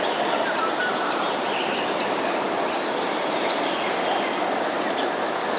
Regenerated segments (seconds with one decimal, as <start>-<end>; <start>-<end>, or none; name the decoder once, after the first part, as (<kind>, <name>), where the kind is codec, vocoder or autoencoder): none